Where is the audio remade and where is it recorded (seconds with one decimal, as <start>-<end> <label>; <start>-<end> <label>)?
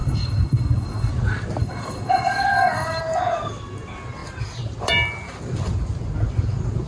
0.0-1.1 remade; 1.1-1.6 recorded; 1.6-3.0 remade; 3.0-6.9 recorded